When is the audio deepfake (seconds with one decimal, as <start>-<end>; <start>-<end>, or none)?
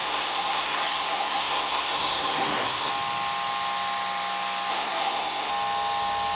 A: 0.0-2.9; 4.7-5.5